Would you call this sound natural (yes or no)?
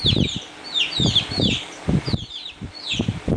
yes